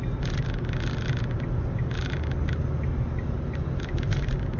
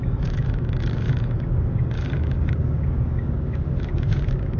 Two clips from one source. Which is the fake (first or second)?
second